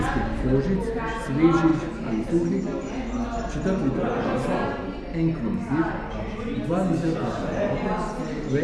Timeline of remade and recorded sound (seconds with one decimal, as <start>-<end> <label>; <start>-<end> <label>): 0.0-1.7 recorded; 1.7-2.3 remade; 2.3-8.6 recorded